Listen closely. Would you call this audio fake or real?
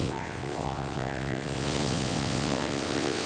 fake